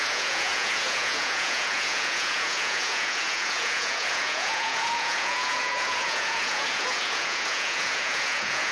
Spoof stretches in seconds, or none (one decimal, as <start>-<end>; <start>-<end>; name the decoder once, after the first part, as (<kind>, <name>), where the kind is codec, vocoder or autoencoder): 0.0-8.7 (vocoder, Vocos)